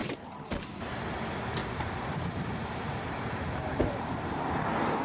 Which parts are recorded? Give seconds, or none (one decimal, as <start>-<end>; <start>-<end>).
0.9-1.6; 4.6-5.0